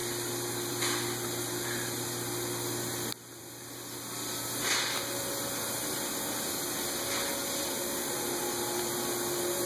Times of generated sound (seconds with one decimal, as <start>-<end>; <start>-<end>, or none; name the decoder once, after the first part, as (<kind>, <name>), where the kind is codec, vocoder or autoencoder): none